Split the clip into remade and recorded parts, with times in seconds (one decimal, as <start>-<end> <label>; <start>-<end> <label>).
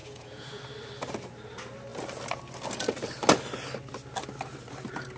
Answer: 0.0-0.6 remade; 0.6-5.2 recorded